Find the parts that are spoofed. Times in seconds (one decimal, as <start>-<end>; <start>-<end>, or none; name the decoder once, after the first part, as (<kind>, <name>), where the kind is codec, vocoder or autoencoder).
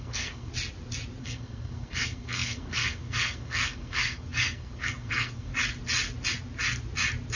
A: 0.0-0.5 (codec, SNAC); 1.2-5.5